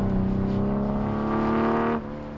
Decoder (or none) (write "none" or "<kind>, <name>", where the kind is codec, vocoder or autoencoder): none